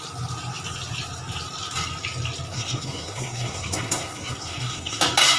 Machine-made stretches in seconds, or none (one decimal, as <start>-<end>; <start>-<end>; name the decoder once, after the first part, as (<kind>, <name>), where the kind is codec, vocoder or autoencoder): 2.5-5.0 (codec, SNAC)